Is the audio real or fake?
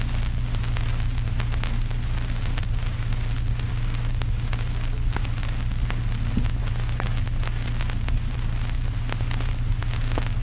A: real